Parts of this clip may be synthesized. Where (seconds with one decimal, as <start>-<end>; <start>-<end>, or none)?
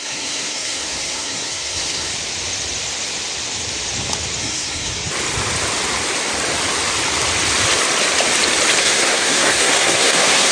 0.0-2.1; 4.4-5.0; 8.8-10.5